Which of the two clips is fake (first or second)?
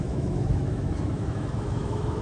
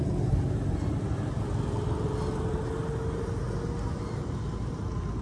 first